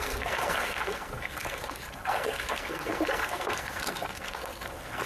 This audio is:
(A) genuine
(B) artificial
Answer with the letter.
B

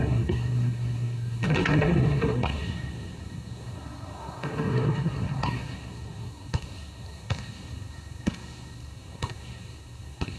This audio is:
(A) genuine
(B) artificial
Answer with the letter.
B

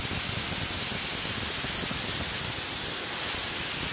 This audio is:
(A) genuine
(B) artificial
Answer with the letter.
A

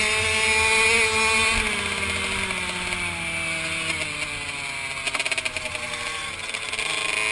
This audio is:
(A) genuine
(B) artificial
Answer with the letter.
A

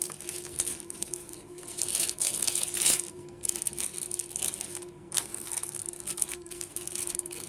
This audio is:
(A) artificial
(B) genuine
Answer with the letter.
A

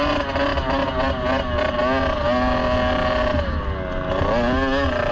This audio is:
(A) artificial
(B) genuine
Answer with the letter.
B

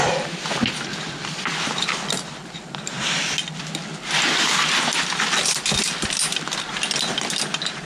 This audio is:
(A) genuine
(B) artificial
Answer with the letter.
A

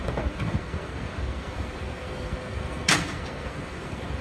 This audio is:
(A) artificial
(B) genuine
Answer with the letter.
A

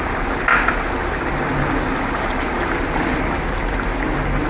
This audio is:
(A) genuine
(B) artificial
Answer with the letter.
A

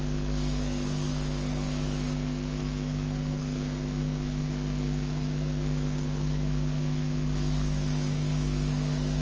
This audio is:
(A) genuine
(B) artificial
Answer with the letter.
B